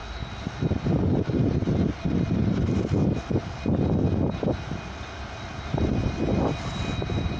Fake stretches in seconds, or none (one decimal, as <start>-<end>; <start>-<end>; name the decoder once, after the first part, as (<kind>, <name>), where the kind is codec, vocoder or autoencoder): none